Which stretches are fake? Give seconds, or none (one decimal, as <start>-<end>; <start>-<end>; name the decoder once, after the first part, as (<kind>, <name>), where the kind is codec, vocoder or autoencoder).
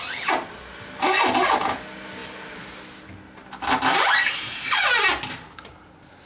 none